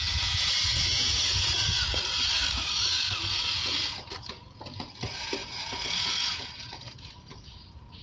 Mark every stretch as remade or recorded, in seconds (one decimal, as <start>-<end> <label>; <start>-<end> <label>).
0.0-8.0 remade